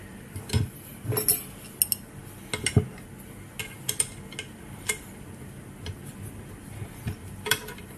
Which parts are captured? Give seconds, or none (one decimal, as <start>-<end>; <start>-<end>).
0.9-3.6; 4.1-7.5